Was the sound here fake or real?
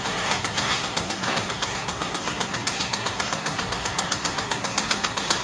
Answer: fake